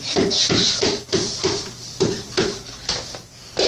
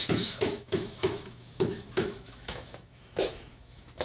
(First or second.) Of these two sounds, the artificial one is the second